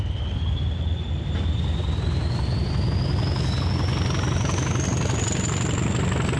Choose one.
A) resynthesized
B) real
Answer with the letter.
B